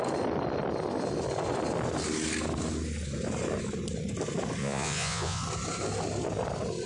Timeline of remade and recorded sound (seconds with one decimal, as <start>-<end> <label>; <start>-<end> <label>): 0.0-4.6 recorded; 4.6-5.4 remade; 5.4-6.9 recorded